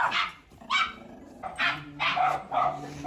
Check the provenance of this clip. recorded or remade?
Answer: recorded